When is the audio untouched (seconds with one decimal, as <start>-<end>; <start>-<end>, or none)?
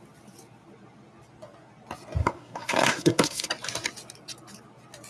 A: 0.0-2.2; 3.5-5.1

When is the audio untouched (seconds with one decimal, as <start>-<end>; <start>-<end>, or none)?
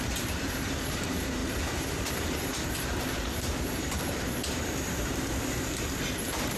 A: none